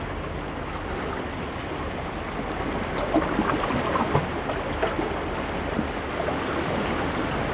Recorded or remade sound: recorded